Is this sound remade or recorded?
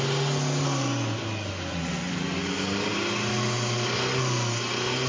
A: recorded